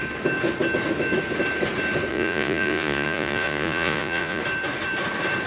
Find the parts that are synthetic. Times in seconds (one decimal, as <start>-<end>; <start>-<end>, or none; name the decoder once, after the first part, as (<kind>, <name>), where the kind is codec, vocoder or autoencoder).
2.1-4.4 (vocoder, Vocos)